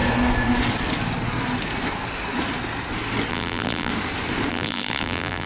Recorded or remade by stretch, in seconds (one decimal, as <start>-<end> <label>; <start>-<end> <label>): 0.0-3.3 recorded; 3.3-3.9 remade; 3.9-4.5 recorded; 4.5-5.5 remade